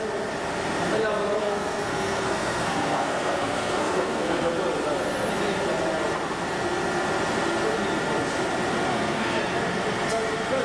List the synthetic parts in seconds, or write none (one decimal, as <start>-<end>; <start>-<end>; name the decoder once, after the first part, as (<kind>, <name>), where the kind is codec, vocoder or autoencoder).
1.4-4.5 (codec, SNAC); 8.9-9.4